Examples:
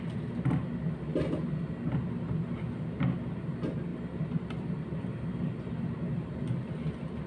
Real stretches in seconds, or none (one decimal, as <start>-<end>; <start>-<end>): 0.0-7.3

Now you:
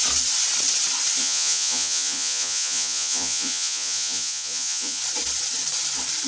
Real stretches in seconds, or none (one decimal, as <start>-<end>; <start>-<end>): 0.0-1.2; 5.0-6.3

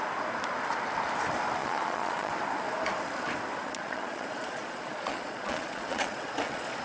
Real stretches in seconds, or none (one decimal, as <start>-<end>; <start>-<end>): 0.0-1.6; 2.3-3.6

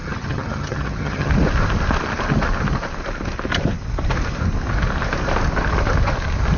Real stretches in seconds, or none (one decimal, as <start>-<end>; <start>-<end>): 1.3-6.6

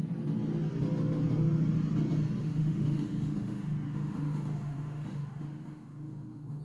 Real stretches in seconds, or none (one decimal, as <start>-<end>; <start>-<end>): 0.0-2.4